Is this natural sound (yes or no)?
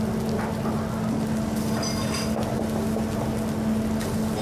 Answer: yes